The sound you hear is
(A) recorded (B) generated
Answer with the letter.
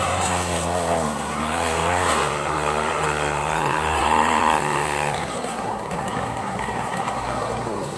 B